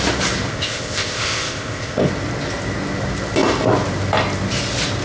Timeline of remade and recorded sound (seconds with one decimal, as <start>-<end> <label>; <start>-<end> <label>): 0.0-0.5 recorded; 0.5-2.1 remade; 2.1-5.0 recorded